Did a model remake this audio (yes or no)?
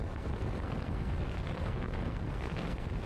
yes